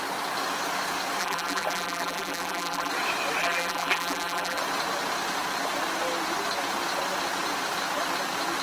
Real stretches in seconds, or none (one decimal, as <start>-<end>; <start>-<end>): 0.0-1.2; 2.9-3.4; 4.6-8.6